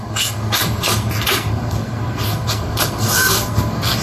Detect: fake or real fake